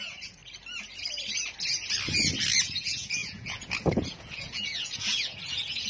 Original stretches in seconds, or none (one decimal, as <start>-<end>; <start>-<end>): 0.4-2.6